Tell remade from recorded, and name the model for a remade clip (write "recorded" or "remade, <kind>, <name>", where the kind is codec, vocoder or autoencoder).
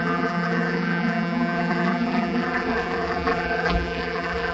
remade, vocoder, BigVGAN v2